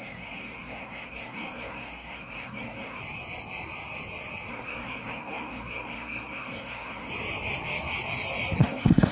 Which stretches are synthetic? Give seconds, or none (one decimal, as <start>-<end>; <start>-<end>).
0.0-3.0; 4.5-7.1; 8.6-9.1